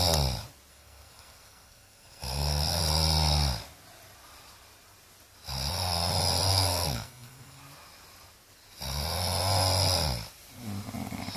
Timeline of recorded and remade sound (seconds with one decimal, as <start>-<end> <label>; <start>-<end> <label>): 0.0-0.7 recorded; 0.7-2.8 remade; 2.8-6.5 recorded; 6.5-7.6 remade; 7.6-11.4 recorded